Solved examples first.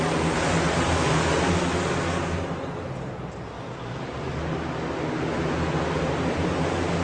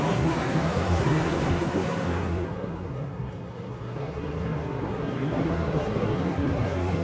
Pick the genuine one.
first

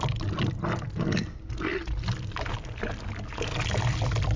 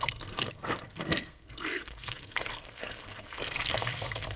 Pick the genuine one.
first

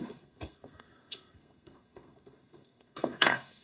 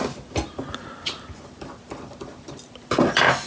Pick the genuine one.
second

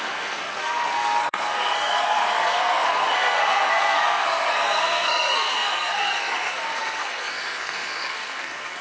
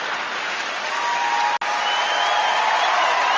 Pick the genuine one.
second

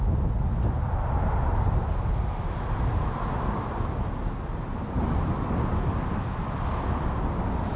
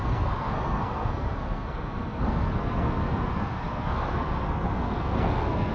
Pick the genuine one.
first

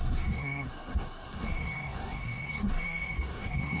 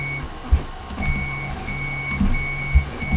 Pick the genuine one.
second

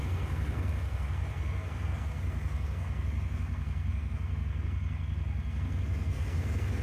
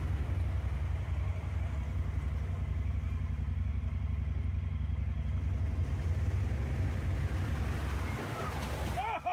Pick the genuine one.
second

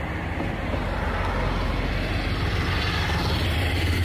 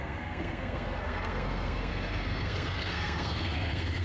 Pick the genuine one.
first